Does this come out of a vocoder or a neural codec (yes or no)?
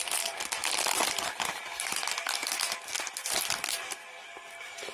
no